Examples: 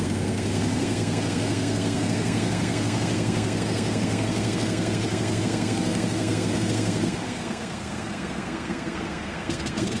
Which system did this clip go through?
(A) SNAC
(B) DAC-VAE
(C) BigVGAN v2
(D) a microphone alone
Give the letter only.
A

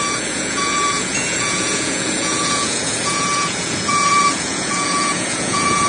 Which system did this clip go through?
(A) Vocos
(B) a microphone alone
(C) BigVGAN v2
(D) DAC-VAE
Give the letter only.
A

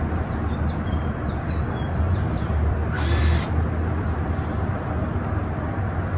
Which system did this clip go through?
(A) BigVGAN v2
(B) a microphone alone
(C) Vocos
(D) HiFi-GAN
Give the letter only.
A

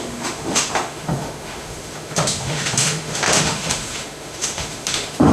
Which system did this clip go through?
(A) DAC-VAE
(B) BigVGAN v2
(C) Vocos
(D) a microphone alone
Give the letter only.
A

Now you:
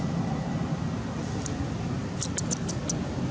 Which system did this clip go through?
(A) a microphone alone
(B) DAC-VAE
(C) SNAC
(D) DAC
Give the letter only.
A